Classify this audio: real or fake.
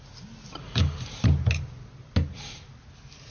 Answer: real